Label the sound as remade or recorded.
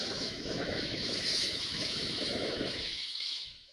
remade